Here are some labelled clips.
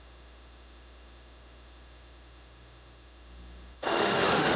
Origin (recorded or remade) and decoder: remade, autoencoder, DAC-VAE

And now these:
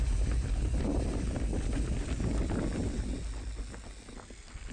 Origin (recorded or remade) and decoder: recorded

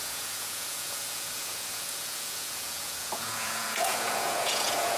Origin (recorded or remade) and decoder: remade, vocoder, Vocos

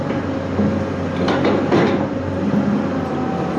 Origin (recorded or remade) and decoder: recorded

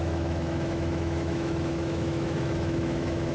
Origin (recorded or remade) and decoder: remade, autoencoder, DAC-VAE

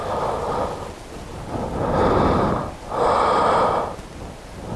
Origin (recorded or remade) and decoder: recorded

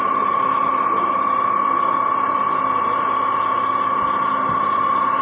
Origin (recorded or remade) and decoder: recorded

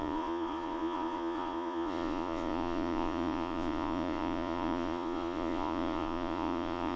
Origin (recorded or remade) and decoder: remade, vocoder, Vocos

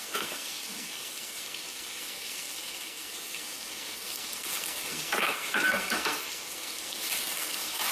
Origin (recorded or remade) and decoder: remade, codec, SNAC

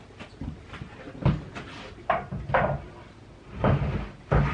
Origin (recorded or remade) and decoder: recorded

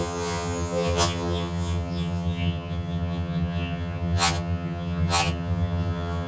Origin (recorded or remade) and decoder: remade, vocoder, HiFi-GAN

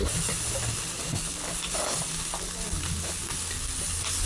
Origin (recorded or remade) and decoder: recorded